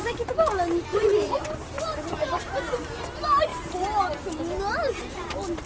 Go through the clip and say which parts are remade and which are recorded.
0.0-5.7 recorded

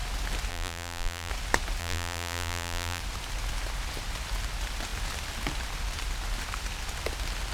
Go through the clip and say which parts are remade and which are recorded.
0.0-0.5 recorded; 0.5-1.3 remade; 1.3-1.8 recorded; 1.8-3.0 remade; 3.0-7.5 recorded